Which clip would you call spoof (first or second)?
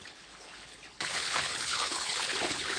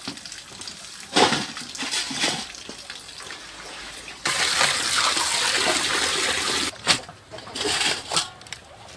first